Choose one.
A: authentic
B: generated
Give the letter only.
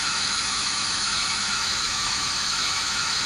B